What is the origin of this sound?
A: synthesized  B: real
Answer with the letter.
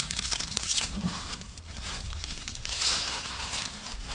A